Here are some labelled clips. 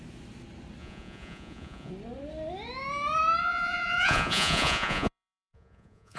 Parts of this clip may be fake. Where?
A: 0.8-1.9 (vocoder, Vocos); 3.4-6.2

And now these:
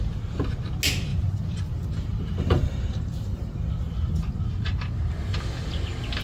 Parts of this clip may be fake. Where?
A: 1.1-3.7 (vocoder, BigVGAN v2)

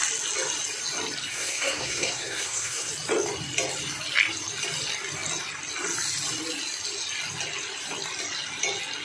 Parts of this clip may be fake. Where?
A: 1.3-2.9 (codec, SNAC)